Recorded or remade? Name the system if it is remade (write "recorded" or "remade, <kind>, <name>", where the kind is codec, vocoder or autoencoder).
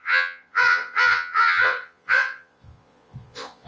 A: remade, vocoder, Vocos